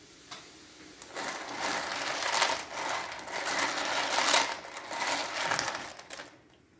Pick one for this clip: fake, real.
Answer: real